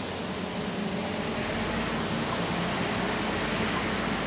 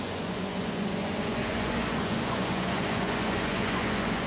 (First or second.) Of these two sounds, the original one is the first